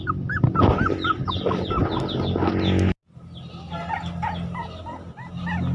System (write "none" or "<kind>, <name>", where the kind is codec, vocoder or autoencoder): none